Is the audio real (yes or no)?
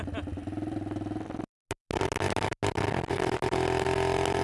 yes